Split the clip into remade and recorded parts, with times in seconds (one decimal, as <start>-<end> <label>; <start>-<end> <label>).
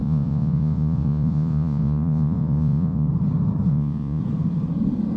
0.0-3.1 remade; 3.1-3.7 recorded; 3.7-4.2 remade; 4.2-5.2 recorded